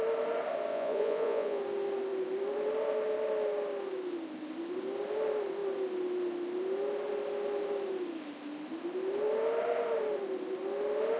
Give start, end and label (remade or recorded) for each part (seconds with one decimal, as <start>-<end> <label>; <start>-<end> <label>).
0.0-0.7 recorded; 0.7-1.6 remade; 1.6-11.2 recorded